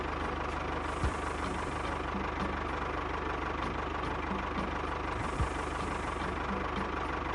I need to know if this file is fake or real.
real